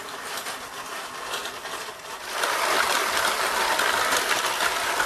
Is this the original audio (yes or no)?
yes